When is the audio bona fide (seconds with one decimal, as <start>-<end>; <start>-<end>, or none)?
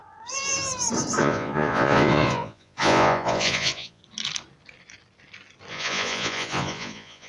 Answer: 0.0-1.2; 4.0-5.7